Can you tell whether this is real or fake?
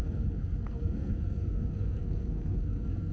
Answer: fake